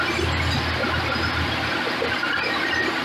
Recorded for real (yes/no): yes